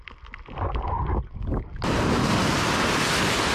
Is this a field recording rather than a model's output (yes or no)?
yes